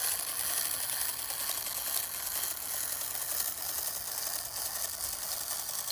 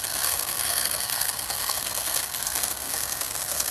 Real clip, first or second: first